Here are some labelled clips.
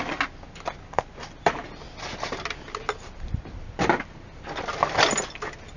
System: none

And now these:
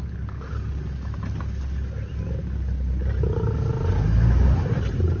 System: none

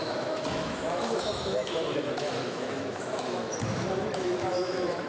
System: autoencoder, DAC-VAE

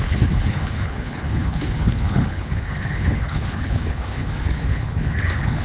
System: codec, HILCodec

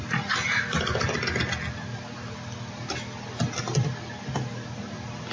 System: none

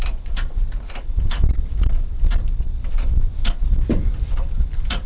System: vocoder, BigVGAN v2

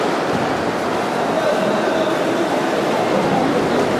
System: none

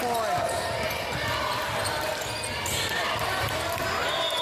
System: none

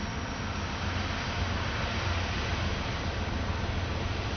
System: none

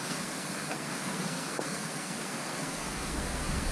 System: codec, SNAC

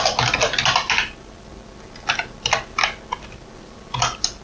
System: none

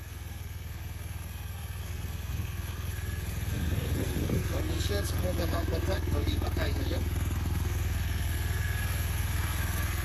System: codec, SNAC